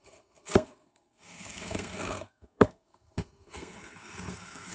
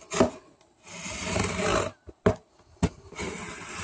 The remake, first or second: first